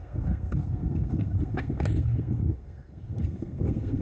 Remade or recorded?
remade